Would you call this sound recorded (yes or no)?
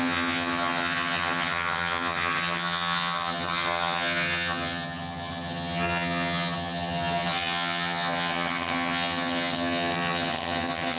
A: no